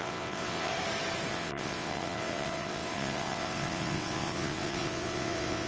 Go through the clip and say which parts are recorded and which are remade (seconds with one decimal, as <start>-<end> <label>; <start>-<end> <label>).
0.0-0.7 remade; 0.7-1.3 recorded; 1.3-5.7 remade